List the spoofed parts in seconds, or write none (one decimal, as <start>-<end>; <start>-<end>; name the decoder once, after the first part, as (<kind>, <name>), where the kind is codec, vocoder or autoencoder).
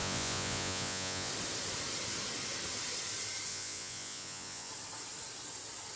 0.0-1.3 (vocoder, Vocos); 3.5-4.7